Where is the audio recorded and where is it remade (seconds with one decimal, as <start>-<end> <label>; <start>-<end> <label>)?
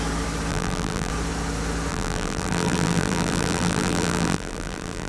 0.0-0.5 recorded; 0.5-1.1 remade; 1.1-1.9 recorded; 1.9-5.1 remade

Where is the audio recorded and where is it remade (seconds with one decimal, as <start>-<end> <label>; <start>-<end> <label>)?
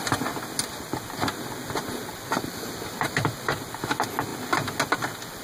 0.0-5.4 recorded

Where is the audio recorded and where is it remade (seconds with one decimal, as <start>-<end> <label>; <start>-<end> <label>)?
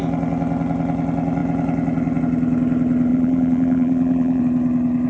0.0-3.1 recorded; 3.1-4.4 remade; 4.4-5.1 recorded